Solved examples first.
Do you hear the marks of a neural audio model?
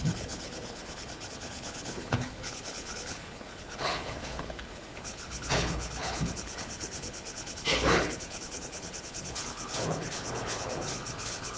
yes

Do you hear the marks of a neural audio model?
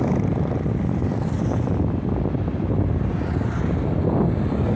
no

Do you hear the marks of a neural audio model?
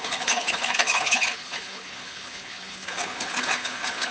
yes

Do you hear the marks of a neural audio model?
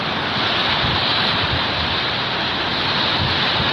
no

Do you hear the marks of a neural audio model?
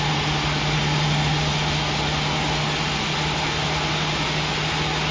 no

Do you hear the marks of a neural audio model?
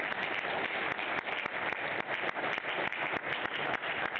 no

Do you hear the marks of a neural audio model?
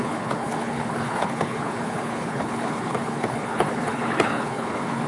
yes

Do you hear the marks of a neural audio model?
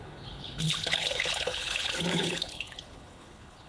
yes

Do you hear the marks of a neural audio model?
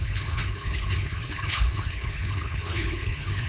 yes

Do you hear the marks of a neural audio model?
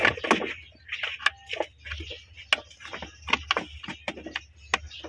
no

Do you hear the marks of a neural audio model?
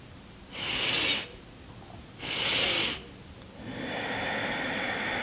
no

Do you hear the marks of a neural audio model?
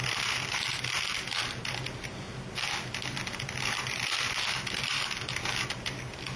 no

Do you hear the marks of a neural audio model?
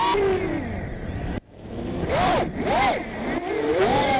no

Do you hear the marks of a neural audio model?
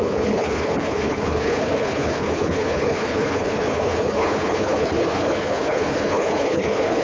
yes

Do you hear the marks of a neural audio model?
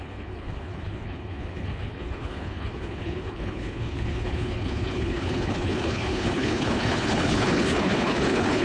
yes